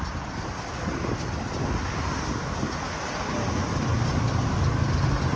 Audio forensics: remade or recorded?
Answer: recorded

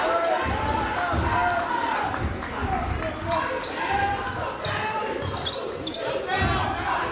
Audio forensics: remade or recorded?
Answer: recorded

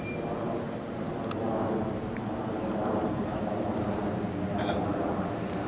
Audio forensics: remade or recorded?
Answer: recorded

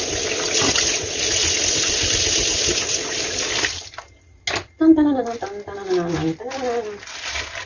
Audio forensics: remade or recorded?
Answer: recorded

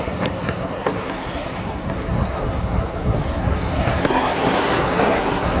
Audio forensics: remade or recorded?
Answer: remade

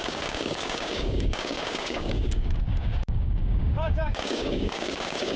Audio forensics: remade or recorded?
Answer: remade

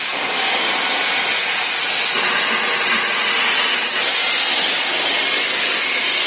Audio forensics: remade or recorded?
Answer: recorded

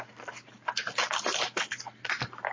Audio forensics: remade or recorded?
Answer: recorded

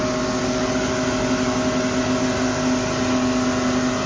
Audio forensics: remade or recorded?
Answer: recorded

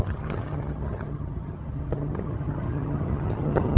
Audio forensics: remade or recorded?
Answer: remade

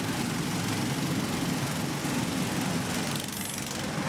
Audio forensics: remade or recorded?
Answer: recorded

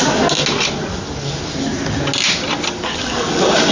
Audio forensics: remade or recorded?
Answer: recorded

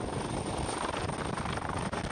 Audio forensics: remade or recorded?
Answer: recorded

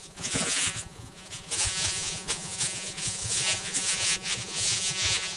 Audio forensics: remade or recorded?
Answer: remade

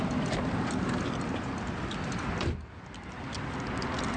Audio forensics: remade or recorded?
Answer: recorded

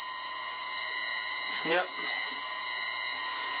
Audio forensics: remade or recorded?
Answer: remade